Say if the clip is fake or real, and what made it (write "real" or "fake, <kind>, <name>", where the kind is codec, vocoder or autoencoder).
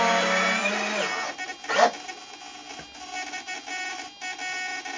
real